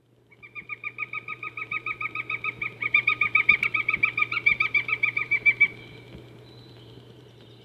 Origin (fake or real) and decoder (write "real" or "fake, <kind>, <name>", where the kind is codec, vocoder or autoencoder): fake, vocoder, BigVGAN v2